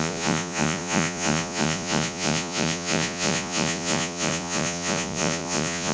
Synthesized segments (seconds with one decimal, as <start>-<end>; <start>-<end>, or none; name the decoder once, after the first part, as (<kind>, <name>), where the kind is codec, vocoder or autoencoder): 0.0-5.9 (vocoder, Vocos)